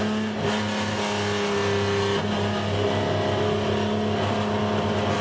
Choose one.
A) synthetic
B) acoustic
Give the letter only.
B